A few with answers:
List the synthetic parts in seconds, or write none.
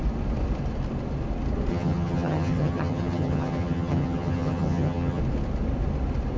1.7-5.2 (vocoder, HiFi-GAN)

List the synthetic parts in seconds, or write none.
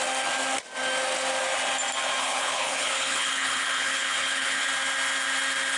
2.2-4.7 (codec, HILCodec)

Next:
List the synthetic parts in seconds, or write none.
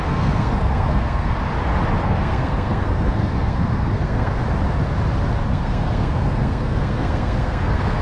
0.0-1.4 (codec, SNAC); 2.0-4.4; 5.5-8.0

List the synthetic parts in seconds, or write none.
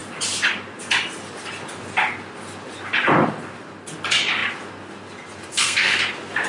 5.5-6.0 (codec, SNAC)